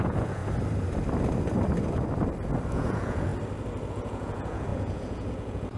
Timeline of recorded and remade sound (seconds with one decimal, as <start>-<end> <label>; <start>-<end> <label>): 0.0-0.4 remade; 0.4-2.7 recorded; 2.7-3.3 remade; 3.3-3.9 recorded; 3.9-5.8 remade